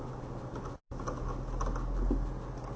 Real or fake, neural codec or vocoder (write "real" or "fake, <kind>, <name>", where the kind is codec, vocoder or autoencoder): real